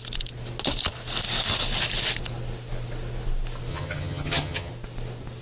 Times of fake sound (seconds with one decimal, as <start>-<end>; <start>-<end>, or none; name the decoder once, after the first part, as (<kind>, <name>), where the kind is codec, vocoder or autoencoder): 3.7-4.7 (vocoder, HiFi-GAN)